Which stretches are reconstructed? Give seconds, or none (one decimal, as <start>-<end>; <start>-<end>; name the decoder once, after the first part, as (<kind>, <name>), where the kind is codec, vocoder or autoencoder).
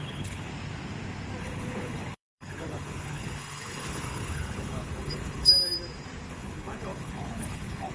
0.0-0.5 (codec, HILCodec); 1.4-5.5; 6.3-7.9